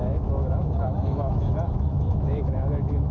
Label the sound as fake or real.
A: fake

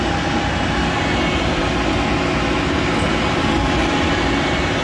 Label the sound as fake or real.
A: real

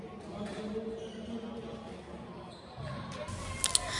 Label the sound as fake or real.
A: real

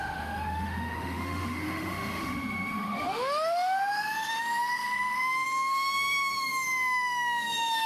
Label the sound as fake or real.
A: fake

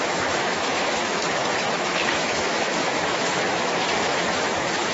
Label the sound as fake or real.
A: fake